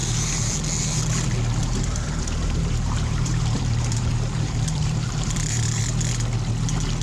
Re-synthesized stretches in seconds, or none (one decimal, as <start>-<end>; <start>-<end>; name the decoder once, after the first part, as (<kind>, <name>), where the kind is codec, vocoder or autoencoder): 0.0-0.5 (vocoder, BigVGAN v2); 1.6-5.8